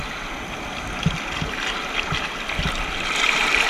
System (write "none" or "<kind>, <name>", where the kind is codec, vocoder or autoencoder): none